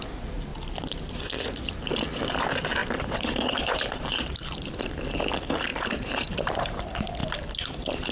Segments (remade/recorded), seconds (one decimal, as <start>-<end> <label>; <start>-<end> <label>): 0.0-2.8 recorded; 2.8-4.9 remade; 4.9-5.7 recorded; 5.7-6.8 remade; 6.8-8.1 recorded